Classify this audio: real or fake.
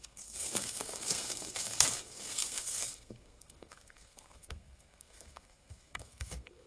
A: fake